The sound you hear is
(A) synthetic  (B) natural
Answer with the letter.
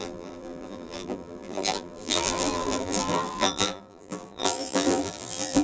A